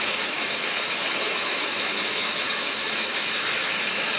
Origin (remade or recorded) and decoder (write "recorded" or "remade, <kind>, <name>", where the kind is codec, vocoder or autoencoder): remade, autoencoder, DAC-VAE